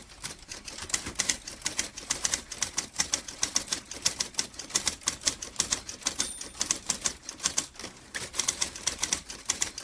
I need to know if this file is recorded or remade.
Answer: remade